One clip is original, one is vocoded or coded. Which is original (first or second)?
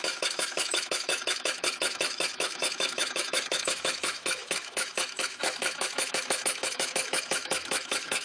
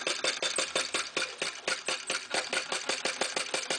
second